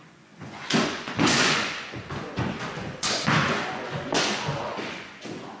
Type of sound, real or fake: fake